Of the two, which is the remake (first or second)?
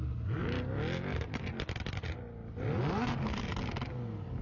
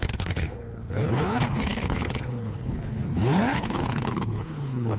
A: second